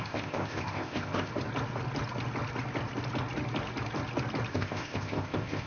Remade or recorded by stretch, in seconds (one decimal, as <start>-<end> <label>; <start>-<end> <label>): 0.0-1.3 remade; 1.3-4.5 recorded; 4.5-5.7 remade